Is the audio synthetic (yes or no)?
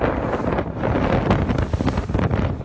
no